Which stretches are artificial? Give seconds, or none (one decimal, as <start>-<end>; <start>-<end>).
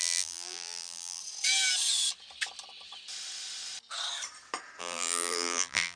0.0-1.2; 4.8-6.0